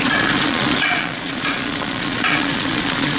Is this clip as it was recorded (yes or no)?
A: no